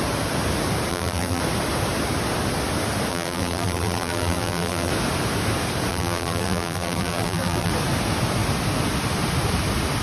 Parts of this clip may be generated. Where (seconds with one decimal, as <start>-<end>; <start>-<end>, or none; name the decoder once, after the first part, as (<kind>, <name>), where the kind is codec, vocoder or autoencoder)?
0.9-1.4 (vocoder, BigVGAN v2); 3.1-4.9; 5.9-7.7